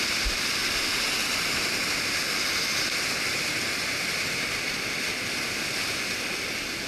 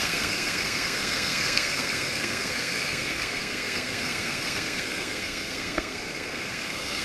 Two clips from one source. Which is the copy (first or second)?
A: second